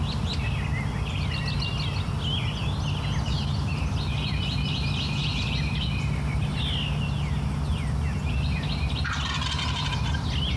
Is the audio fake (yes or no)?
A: no